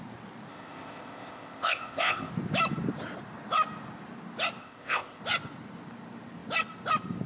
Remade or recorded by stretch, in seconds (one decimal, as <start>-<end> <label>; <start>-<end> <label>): 0.0-0.5 recorded; 0.5-2.3 remade; 2.3-4.6 recorded; 4.6-5.2 remade; 5.2-7.3 recorded